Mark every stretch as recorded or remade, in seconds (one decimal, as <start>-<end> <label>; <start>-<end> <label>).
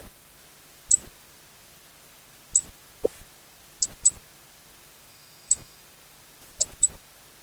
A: 0.0-5.1 recorded; 5.1-5.8 remade; 5.8-7.4 recorded